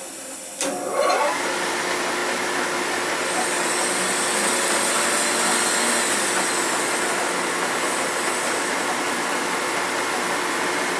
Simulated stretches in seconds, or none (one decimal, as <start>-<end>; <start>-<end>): none